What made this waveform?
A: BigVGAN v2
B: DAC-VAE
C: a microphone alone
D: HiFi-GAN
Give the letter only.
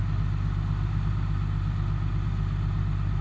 C